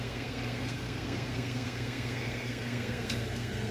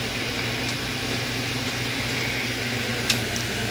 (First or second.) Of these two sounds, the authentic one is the second